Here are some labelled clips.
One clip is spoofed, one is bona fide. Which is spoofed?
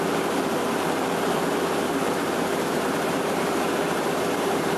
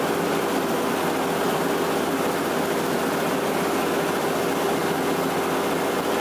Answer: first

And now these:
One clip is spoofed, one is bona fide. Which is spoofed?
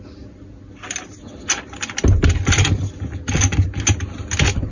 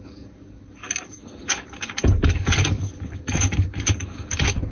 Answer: second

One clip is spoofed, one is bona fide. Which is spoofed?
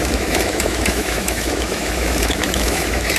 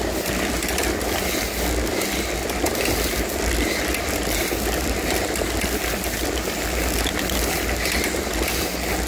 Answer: first